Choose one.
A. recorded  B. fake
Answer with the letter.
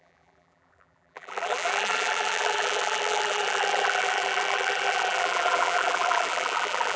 B